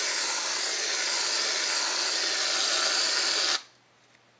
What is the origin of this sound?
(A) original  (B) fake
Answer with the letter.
A